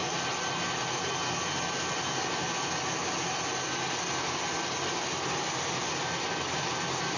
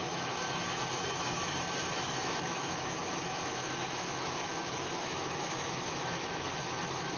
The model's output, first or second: second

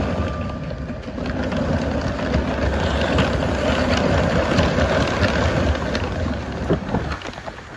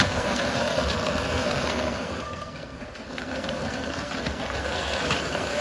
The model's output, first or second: second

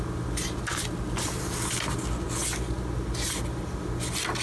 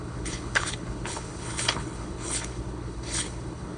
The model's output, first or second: second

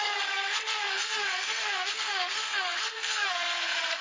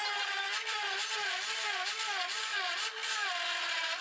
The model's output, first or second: first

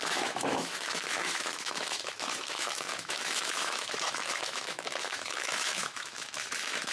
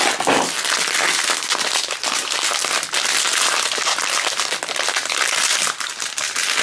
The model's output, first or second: first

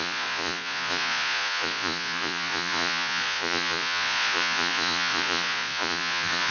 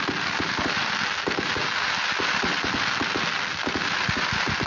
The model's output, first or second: first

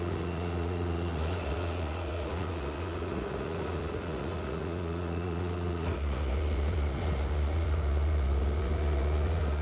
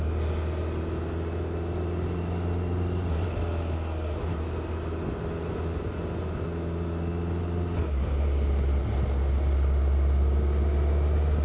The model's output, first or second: first